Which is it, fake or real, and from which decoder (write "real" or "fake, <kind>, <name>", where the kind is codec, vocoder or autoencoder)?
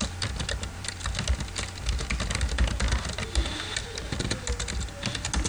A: real